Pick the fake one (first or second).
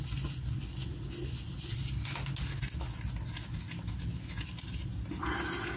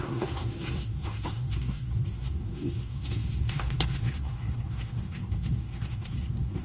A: second